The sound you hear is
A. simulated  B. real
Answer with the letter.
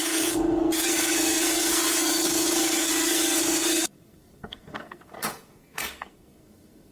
A